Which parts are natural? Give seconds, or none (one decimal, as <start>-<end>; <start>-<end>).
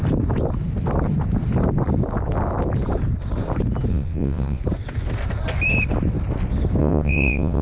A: 0.0-3.9; 4.6-6.8